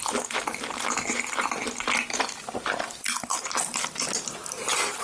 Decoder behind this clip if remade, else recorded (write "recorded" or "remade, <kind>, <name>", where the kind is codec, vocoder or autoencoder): remade, vocoder, BigVGAN v2